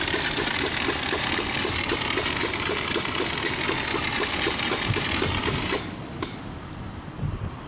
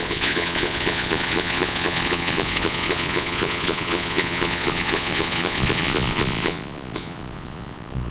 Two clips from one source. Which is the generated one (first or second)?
second